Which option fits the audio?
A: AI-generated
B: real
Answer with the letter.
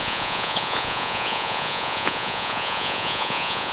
A